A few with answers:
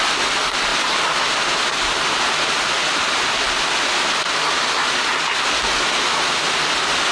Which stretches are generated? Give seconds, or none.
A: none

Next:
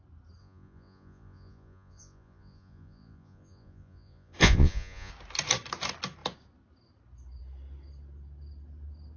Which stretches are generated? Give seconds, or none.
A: 0.4-5.1

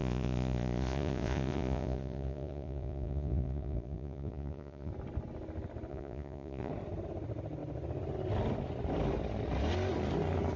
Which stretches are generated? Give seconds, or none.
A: 0.0-4.9; 5.9-6.7